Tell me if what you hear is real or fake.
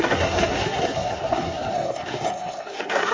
fake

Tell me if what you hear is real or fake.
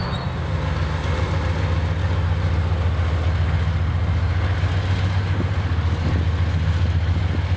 real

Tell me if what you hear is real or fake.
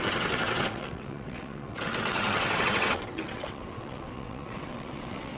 fake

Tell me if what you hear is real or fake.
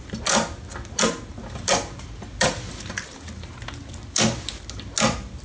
real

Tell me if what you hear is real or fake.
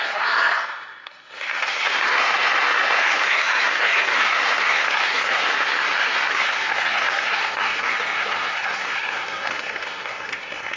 fake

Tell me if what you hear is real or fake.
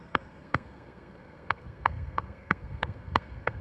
fake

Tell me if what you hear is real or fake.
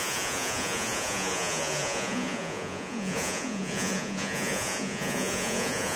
fake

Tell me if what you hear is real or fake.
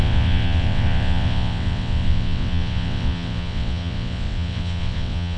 fake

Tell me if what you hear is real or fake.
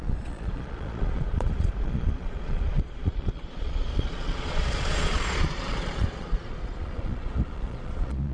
fake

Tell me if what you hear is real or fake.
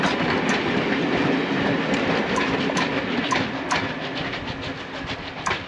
real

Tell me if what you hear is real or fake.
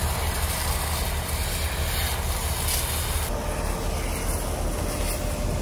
real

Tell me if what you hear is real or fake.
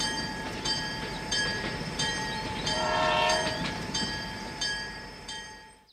fake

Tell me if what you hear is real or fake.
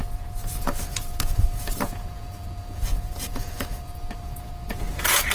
fake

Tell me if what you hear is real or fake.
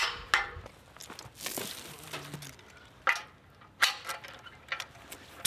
real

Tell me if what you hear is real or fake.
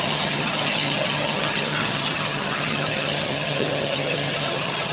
fake